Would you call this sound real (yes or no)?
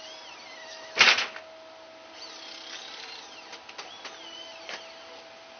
yes